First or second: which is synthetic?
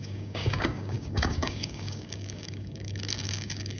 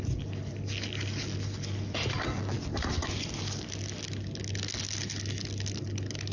first